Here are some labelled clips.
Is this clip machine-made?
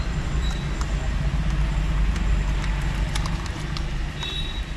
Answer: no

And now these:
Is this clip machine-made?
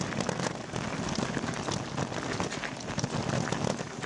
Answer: no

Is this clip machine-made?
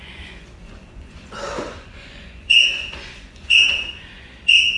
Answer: yes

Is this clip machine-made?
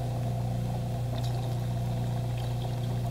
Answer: no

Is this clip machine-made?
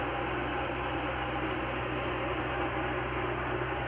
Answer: no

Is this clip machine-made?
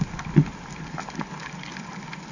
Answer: no